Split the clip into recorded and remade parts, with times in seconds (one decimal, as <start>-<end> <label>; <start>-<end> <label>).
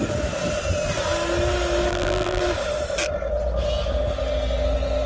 0.0-1.9 recorded; 1.9-2.4 remade; 2.4-5.1 recorded